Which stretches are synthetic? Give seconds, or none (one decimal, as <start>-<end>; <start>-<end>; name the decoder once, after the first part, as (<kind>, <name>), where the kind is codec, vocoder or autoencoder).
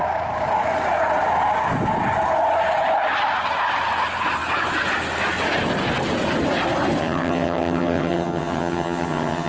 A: 7.0-9.5 (vocoder, HiFi-GAN)